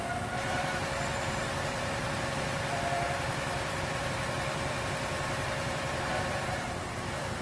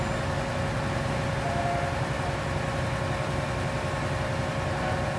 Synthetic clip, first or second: first